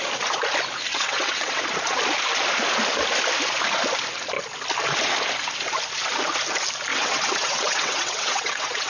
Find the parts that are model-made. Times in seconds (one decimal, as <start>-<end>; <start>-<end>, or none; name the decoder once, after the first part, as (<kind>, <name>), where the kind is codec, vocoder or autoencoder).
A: 0.9-1.6 (vocoder, WaveNeXt); 6.9-8.9